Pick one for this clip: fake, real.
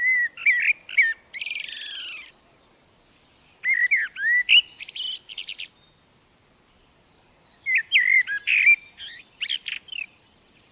real